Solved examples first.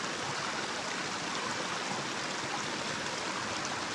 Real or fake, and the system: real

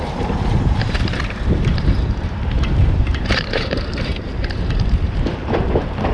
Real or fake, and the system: fake, vocoder, BigVGAN v2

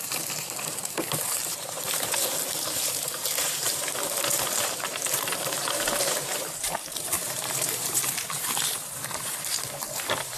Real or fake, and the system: fake, vocoder, BigVGAN v2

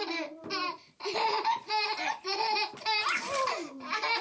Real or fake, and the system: fake, vocoder, BigVGAN v2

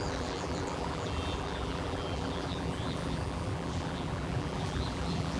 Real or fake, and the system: fake, vocoder, BigVGAN v2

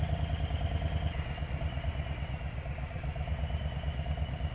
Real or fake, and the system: real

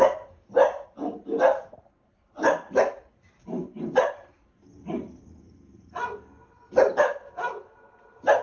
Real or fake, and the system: real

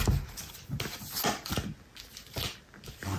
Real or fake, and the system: real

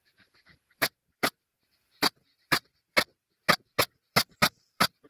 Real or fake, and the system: fake, vocoder, BigVGAN v2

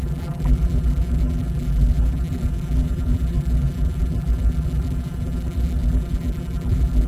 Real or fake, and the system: fake, vocoder, BigVGAN v2